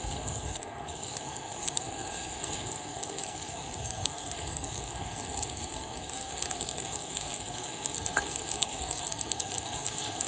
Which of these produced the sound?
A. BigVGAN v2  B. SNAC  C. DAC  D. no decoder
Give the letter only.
B